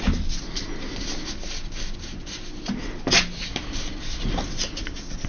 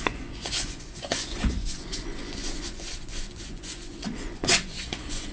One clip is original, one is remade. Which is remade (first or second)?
second